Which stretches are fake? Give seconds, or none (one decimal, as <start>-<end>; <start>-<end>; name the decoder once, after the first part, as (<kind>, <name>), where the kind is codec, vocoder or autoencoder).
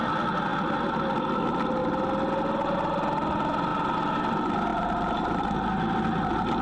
4.7-5.8 (vocoder, BigVGAN v2)